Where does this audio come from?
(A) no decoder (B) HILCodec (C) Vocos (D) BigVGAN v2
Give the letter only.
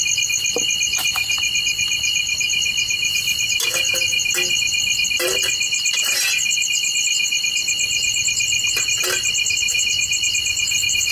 A